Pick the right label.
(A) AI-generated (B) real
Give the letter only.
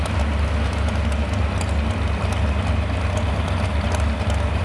B